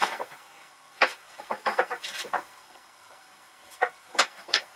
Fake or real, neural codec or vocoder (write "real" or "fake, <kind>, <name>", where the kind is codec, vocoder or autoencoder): fake, codec, SNAC